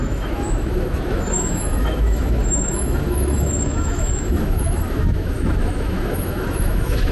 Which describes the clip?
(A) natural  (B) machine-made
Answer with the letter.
B